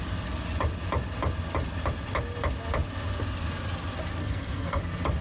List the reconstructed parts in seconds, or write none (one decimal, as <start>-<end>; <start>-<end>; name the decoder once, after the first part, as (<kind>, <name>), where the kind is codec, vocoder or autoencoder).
4.2-4.8 (codec, SNAC)